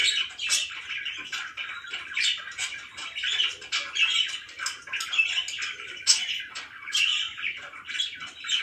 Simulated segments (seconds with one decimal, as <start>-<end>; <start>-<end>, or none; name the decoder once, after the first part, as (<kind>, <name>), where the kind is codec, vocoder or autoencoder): none